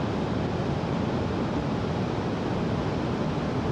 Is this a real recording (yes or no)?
yes